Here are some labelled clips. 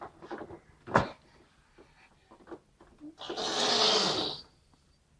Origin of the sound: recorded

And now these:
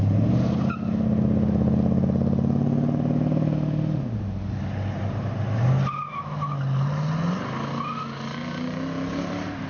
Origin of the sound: recorded